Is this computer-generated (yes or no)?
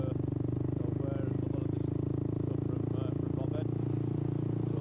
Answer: no